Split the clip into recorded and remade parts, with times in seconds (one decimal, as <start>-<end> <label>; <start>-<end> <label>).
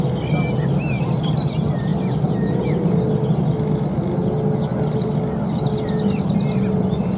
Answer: 0.0-7.2 recorded